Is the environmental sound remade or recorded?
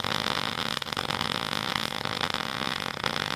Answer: recorded